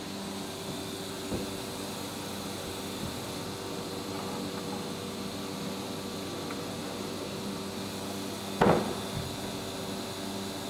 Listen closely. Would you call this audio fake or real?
real